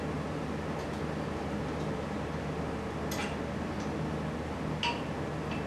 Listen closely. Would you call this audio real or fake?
real